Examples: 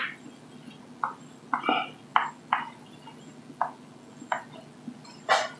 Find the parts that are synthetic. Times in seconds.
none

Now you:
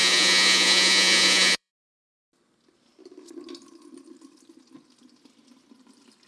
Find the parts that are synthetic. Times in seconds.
0.0-1.7 (vocoder, Vocos)

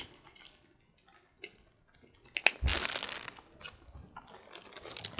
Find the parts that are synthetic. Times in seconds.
none